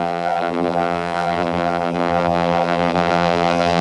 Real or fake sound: fake